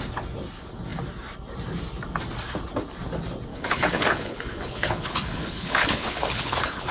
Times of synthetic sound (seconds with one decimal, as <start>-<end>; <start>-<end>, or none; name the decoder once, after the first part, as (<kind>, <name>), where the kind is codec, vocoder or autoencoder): 3.5-6.9 (codec, HILCodec)